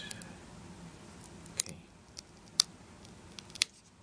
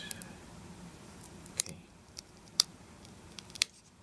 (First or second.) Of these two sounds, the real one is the first